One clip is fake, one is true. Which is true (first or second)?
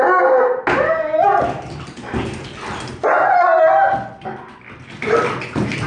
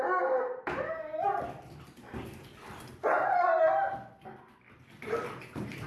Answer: first